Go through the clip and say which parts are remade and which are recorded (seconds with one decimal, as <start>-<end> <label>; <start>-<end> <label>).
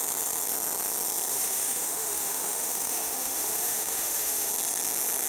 0.0-1.3 recorded; 1.3-4.5 remade; 4.5-5.3 recorded